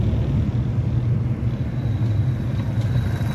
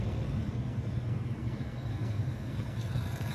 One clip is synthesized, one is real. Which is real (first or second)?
first